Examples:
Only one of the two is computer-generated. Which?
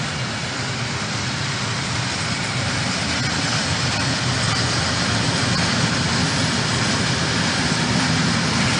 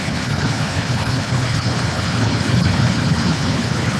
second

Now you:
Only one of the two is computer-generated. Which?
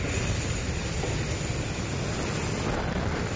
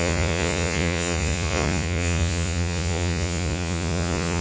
second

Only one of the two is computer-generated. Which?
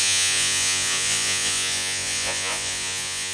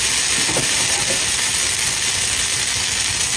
first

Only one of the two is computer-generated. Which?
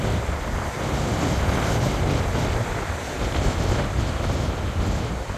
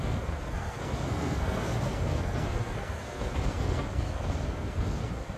second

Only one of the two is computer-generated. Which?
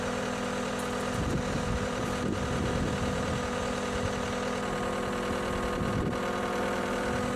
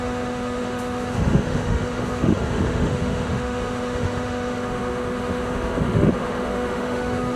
second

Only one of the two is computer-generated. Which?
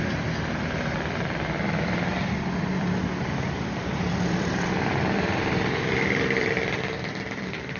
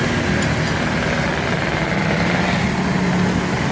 first